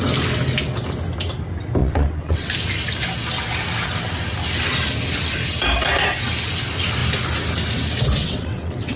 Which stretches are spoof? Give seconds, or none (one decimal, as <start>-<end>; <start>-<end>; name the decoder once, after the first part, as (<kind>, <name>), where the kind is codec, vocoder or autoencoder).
1.8-2.5 (vocoder, WaveNeXt); 8.2-9.0